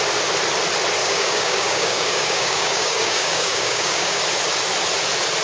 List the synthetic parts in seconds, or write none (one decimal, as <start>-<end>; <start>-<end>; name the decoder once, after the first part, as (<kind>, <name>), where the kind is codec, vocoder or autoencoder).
1.0-4.2 (codec, DAC)